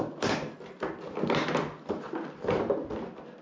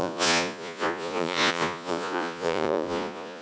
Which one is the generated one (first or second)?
second